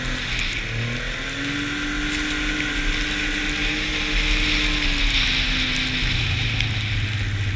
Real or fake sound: real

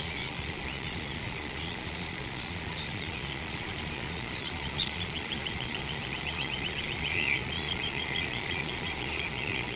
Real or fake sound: fake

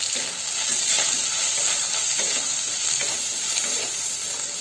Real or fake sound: real